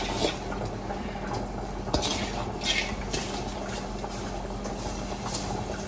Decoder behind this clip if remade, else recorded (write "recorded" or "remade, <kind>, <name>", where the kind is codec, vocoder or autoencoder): recorded